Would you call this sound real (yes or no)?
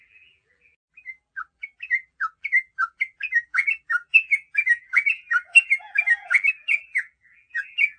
no